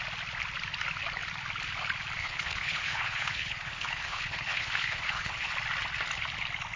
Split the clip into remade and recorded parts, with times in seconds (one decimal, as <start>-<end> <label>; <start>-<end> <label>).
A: 0.0-2.2 recorded; 2.2-5.5 remade; 5.5-6.8 recorded

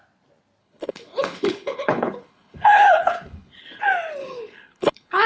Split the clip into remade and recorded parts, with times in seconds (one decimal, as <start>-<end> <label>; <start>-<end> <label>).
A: 0.0-0.6 recorded; 0.6-3.8 remade; 3.8-4.2 recorded; 4.2-5.3 remade

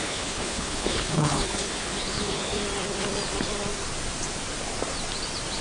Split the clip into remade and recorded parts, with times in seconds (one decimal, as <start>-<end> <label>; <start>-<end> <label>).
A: 0.0-2.6 remade; 2.6-5.6 recorded

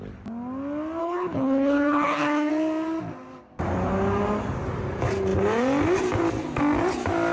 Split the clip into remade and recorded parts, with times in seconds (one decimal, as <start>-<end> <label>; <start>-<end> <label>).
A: 0.0-1.0 recorded; 1.0-2.5 remade; 2.5-7.3 recorded

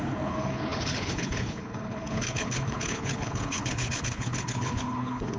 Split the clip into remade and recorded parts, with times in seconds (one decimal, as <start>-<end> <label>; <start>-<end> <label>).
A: 0.0-5.4 remade

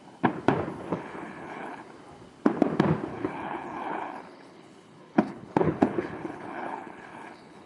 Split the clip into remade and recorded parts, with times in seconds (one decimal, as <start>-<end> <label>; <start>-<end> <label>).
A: 0.0-0.9 recorded; 0.9-1.8 remade; 1.8-3.1 recorded; 3.1-7.7 remade